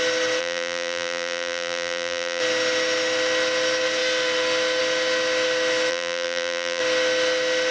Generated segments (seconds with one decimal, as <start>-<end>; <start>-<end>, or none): 0.4-2.4; 5.9-6.8